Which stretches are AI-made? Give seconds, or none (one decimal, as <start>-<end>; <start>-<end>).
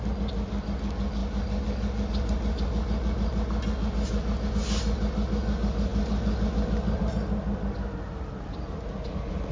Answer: none